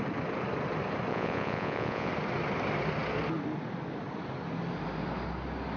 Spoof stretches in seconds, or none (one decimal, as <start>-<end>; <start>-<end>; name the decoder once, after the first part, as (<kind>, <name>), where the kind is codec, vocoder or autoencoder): 1.1-2.1 (vocoder, Vocos)